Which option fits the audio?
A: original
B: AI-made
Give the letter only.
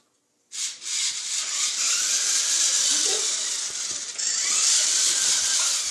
A